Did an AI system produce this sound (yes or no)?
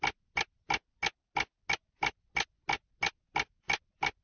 no